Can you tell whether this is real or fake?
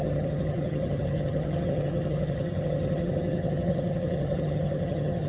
fake